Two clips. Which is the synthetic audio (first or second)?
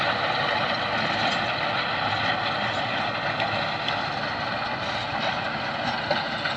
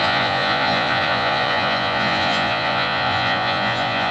second